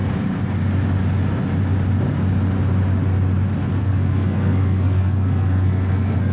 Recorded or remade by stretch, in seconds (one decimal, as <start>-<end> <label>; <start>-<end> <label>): 0.0-3.8 recorded; 3.8-6.3 remade